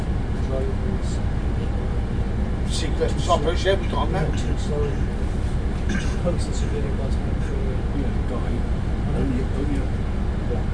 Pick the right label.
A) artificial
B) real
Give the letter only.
B